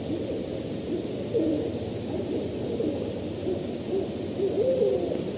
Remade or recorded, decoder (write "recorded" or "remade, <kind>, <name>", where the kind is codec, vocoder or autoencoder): recorded